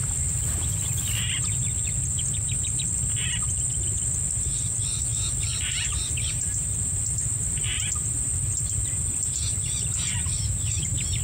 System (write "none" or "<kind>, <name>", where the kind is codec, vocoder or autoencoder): none